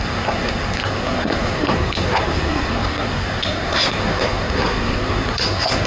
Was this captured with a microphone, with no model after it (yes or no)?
no